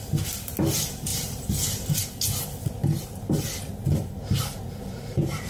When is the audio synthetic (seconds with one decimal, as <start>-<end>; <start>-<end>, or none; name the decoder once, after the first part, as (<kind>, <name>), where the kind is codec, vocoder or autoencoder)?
1.1-2.0 (vocoder, BigVGAN v2); 2.8-5.5